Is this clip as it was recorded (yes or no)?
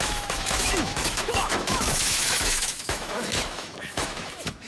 no